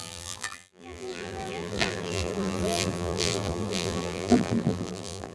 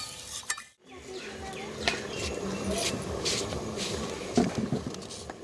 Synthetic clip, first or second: first